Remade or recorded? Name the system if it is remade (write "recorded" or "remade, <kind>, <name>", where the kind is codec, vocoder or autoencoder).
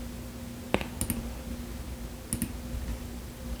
recorded